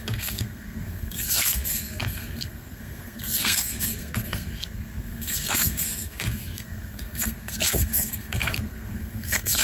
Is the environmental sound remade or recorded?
remade